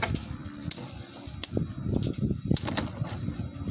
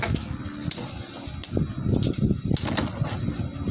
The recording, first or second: second